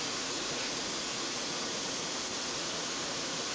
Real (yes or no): no